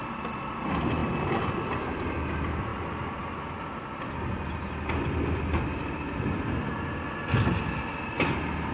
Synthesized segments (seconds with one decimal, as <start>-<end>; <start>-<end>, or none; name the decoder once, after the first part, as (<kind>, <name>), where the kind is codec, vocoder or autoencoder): none